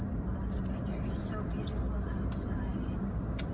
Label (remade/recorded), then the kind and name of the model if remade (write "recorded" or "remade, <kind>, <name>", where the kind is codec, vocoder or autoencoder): recorded